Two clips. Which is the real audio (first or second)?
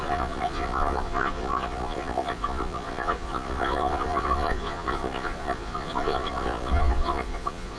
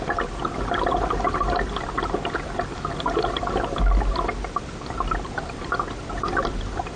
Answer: second